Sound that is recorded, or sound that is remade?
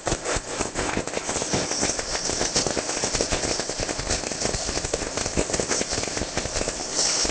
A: remade